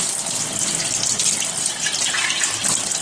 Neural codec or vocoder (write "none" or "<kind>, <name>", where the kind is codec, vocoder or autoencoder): none